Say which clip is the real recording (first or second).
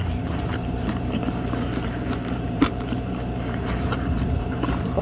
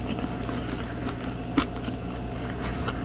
second